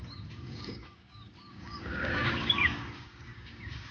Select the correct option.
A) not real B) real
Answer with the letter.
A